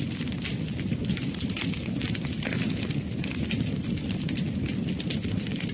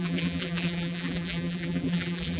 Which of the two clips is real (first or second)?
first